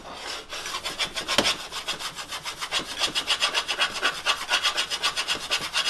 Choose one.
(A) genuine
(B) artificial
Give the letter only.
A